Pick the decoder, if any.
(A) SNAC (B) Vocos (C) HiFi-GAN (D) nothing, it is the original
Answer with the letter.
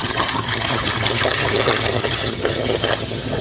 C